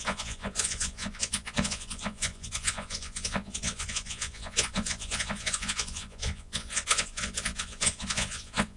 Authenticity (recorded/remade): remade